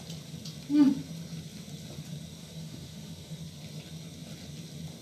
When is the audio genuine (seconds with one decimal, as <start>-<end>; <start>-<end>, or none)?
0.0-2.4; 3.4-5.0

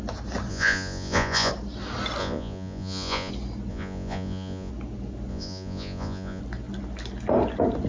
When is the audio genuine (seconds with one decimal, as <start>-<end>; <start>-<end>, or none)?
0.0-0.5; 1.5-2.2; 3.3-3.7; 4.7-5.3; 6.4-7.9

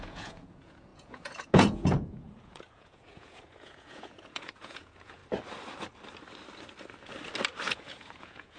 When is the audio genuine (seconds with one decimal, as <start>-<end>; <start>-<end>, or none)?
5.2-7.7